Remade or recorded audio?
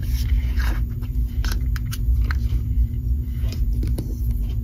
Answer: remade